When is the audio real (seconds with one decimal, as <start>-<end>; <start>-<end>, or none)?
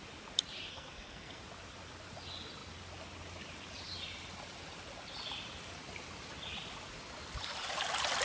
0.0-0.7; 1.4-8.2